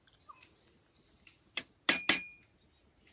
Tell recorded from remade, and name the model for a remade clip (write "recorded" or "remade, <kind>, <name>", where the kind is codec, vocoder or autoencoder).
recorded